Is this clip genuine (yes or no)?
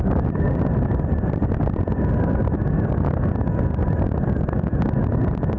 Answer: yes